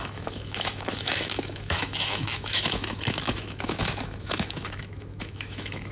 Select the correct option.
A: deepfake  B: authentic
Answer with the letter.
A